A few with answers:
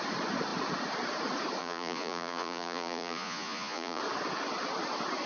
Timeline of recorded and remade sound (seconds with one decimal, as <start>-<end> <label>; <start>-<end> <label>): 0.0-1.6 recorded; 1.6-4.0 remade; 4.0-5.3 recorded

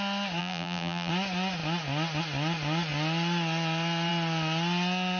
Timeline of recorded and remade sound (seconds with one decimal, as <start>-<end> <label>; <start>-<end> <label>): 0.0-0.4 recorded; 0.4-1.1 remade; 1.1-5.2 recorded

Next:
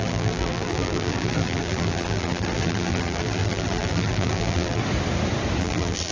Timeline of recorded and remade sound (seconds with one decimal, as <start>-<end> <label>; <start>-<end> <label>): 0.0-4.8 remade; 4.8-5.6 recorded; 5.6-6.1 remade

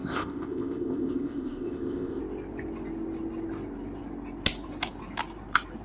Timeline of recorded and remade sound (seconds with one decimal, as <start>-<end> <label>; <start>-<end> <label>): 0.0-2.2 remade; 2.2-5.8 recorded

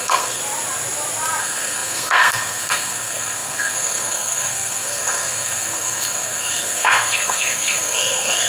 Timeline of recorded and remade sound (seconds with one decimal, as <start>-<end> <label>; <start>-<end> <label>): 0.0-0.4 remade; 0.4-1.4 recorded; 1.4-8.5 remade

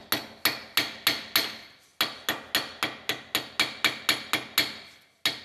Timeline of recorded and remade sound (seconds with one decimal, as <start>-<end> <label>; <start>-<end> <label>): 0.0-5.4 recorded

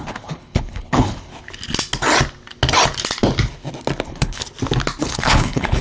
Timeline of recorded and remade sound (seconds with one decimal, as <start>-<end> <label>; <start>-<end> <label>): 0.0-1.3 remade; 1.3-4.0 recorded; 4.0-4.4 remade; 4.4-5.0 recorded; 5.0-5.8 remade